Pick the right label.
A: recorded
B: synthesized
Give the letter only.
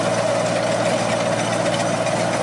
A